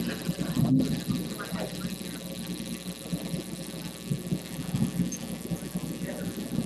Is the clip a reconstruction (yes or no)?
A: no